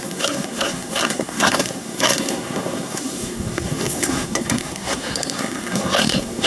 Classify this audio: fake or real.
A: fake